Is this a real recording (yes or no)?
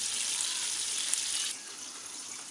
yes